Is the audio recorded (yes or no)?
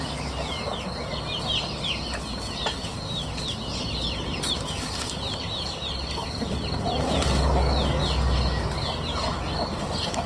yes